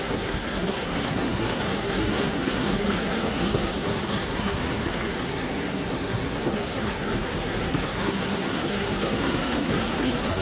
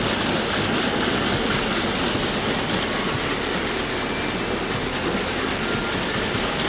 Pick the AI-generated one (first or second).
first